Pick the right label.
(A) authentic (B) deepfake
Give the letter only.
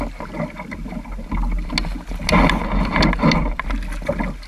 A